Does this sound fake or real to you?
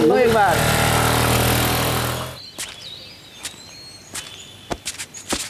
real